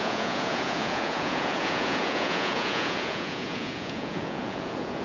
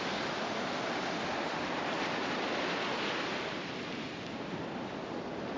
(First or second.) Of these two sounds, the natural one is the second